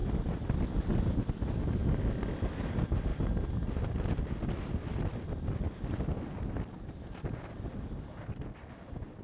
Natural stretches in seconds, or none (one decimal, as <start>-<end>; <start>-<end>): 0.0-9.2